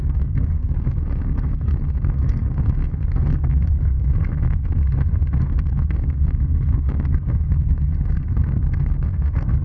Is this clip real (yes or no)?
no